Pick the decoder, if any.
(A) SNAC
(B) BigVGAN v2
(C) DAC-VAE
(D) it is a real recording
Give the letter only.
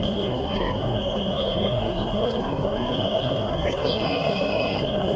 A